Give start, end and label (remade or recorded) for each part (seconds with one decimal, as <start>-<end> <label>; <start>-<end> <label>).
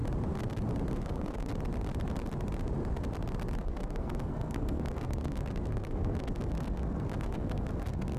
0.0-0.9 recorded; 0.9-1.5 remade; 1.5-3.6 recorded; 3.6-8.2 remade